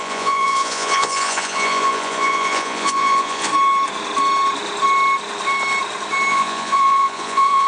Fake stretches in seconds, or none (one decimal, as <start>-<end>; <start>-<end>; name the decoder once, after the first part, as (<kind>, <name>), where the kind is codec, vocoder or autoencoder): 0.0-3.5 (vocoder, Vocos); 6.3-7.7